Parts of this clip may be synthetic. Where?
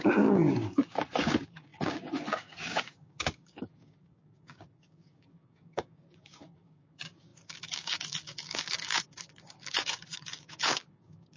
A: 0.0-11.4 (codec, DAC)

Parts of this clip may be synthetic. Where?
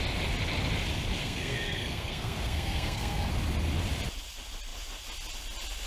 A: 1.2-3.3 (codec, SNAC)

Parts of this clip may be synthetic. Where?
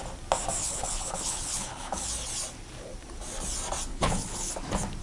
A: 0.6-2.1 (codec, HILCodec); 3.9-4.5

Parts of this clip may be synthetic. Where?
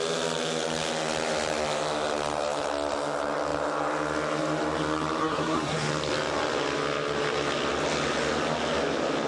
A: 5.2-5.9 (codec, SNAC)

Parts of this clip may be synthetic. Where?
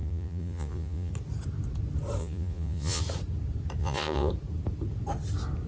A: 0.0-1.1 (vocoder, Vocos); 2.2-3.0; 3.8-4.3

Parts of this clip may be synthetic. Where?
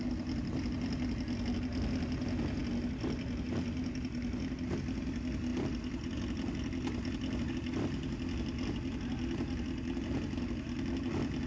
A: none